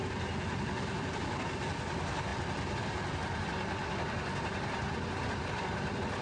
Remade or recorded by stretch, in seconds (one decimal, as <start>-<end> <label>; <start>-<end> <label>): 0.0-6.2 recorded